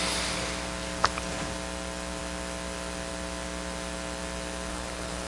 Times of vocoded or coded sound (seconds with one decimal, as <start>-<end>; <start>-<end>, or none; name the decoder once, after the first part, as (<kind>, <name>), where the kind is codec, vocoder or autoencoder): 4.7-5.3 (codec, HILCodec)